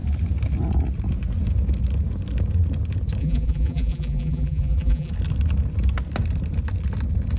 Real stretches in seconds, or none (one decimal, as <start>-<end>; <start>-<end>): 0.0-3.2; 5.1-7.4